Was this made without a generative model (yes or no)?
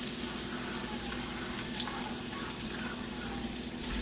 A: yes